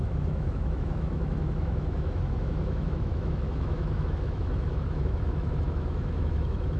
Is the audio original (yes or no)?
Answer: no